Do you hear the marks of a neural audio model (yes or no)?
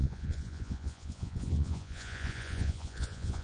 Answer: yes